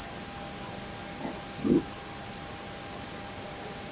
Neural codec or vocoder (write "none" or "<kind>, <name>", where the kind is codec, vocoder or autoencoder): none